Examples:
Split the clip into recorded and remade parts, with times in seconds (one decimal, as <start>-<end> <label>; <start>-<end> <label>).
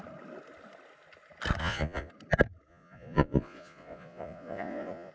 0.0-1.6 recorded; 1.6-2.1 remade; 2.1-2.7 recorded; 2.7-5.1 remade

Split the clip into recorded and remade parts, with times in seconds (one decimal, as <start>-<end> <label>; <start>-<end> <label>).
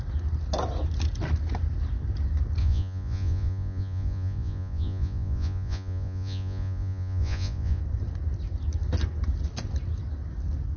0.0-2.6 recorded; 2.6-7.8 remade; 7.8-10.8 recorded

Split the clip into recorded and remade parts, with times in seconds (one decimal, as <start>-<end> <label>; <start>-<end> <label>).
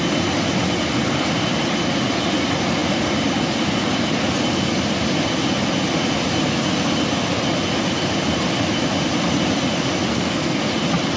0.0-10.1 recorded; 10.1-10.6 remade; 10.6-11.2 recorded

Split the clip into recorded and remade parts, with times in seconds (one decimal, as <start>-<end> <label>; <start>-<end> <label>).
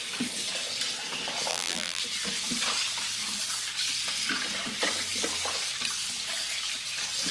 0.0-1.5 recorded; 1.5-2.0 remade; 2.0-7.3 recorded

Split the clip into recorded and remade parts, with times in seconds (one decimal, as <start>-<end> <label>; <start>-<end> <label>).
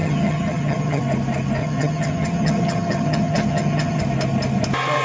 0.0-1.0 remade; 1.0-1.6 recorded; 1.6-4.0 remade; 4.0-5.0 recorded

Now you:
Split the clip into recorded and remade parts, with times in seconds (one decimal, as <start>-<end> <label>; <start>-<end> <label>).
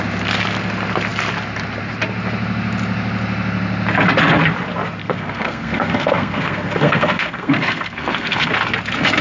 0.0-5.0 recorded; 5.0-8.5 remade; 8.5-9.2 recorded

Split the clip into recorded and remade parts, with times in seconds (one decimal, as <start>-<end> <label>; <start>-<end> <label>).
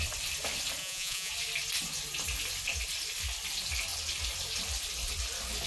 0.0-0.8 recorded; 0.8-1.3 remade; 1.3-5.7 recorded